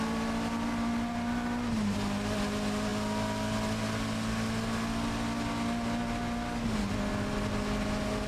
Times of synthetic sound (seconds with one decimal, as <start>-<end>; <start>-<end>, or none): none